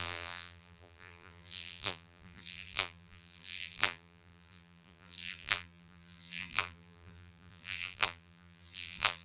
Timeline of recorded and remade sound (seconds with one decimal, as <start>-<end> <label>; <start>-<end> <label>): 0.0-9.2 remade